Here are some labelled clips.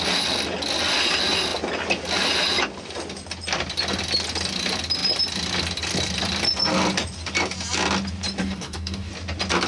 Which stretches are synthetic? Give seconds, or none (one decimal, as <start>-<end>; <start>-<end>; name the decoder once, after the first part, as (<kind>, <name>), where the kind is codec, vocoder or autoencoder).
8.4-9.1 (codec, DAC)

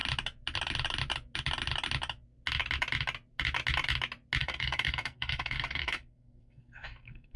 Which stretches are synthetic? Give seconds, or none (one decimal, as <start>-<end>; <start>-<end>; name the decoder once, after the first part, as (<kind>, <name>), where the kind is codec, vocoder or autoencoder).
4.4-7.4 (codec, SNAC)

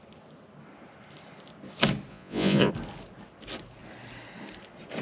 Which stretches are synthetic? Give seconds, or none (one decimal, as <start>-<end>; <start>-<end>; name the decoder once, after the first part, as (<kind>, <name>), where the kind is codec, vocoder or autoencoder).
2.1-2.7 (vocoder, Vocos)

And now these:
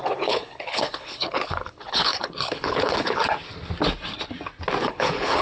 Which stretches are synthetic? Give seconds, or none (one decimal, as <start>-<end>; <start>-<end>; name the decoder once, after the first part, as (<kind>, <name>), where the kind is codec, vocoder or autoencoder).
0.0-3.2 (codec, HILCodec); 4.8-5.4